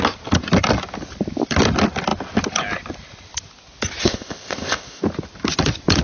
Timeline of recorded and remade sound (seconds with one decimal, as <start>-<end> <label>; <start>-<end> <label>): 0.0-4.0 recorded; 4.0-5.0 remade; 5.0-6.0 recorded